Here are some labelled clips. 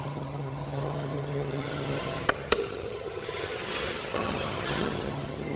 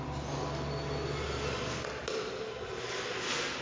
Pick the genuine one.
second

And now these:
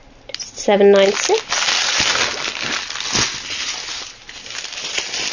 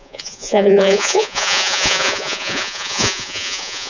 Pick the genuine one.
first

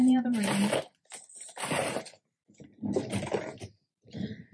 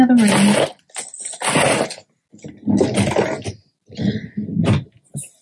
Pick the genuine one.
second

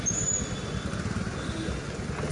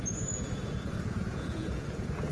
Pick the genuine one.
first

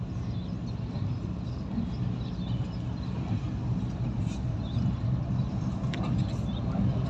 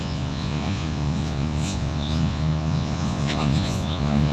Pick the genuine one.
first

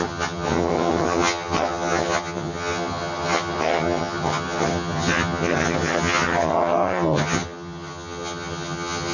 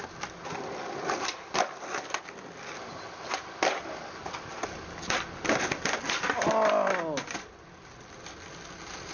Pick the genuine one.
second